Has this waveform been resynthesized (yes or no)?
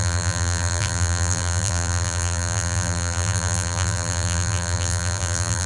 yes